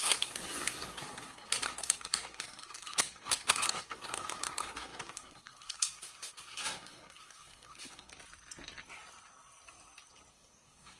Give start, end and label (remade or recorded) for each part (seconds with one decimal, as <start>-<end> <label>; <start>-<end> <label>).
0.0-8.1 remade; 8.1-10.3 recorded; 10.3-11.0 remade